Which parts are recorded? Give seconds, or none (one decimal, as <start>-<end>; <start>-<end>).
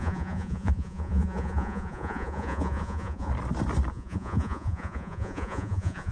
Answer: 3.3-3.9